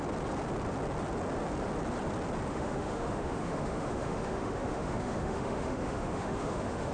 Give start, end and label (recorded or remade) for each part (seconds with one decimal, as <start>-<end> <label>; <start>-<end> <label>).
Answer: 0.0-2.5 recorded; 2.5-6.9 remade